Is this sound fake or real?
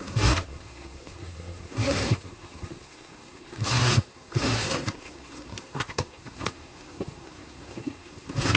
fake